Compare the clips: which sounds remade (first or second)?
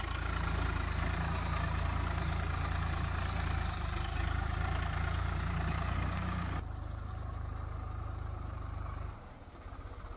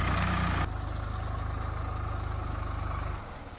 first